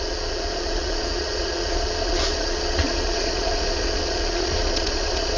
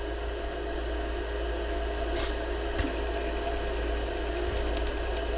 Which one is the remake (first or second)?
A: first